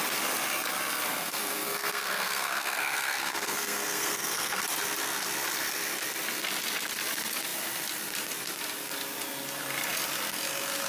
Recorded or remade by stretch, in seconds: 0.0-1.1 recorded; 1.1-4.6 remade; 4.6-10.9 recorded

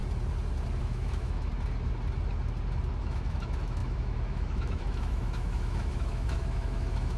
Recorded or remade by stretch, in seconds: 0.0-0.8 recorded; 0.8-1.5 remade; 1.5-3.0 recorded; 3.0-7.2 remade